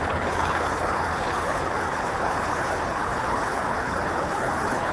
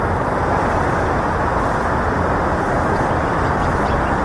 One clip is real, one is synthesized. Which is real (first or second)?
second